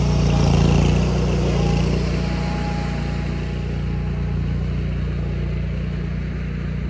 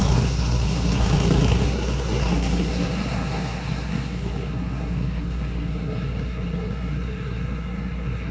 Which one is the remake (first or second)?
second